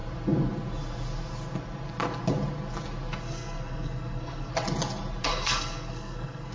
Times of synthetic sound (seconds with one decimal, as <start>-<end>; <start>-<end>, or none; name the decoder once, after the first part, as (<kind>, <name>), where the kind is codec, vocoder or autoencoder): 3.2-4.5 (codec, SNAC); 5.3-6.5